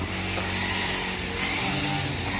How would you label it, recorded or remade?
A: recorded